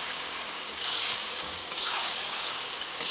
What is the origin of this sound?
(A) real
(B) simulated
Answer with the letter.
B